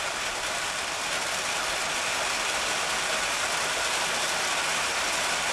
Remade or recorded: recorded